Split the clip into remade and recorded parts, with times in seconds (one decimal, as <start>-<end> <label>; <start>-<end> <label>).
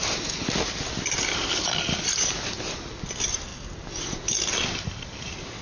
0.0-5.6 recorded